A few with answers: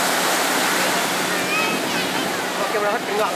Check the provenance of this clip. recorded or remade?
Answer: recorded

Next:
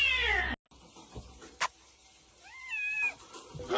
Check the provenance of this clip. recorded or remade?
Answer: recorded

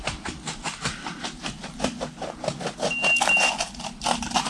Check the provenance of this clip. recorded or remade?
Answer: recorded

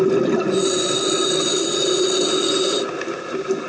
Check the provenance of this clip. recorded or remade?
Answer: recorded